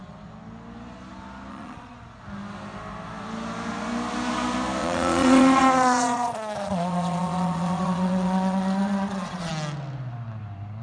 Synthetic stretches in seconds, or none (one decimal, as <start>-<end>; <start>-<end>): 1.5-2.0; 4.8-9.5